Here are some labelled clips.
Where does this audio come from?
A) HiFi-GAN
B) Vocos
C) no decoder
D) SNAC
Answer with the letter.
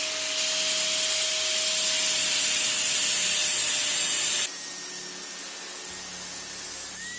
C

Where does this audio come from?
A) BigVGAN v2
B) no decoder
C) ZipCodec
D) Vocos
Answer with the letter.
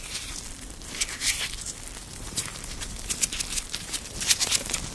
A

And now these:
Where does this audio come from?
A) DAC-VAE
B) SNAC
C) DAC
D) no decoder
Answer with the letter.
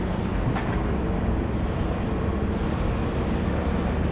D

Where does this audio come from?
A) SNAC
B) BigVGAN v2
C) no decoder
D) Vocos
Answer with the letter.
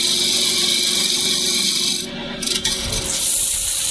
C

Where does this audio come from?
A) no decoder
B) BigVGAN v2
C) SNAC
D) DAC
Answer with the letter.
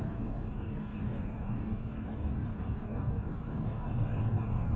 D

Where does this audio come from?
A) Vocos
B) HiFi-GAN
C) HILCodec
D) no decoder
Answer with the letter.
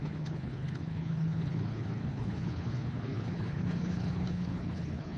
C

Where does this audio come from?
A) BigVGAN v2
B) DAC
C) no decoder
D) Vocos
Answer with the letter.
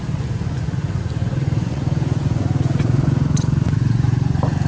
D